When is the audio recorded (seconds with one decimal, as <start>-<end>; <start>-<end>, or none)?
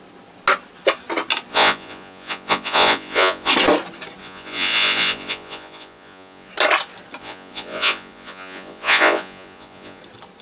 0.0-1.5; 3.5-4.2; 6.5-7.2; 10.0-10.4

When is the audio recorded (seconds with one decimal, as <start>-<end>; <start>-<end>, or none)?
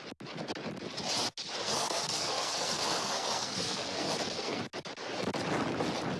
0.0-1.6; 4.6-6.2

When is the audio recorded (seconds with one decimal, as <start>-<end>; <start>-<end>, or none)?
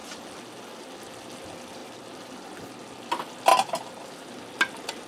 0.0-5.1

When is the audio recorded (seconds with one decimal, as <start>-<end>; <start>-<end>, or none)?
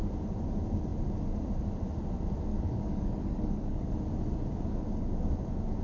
0.0-2.5; 3.9-5.8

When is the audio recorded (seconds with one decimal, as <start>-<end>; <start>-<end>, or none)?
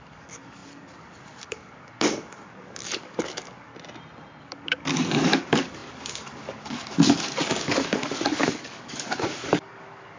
3.7-4.4